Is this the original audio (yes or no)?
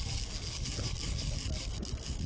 yes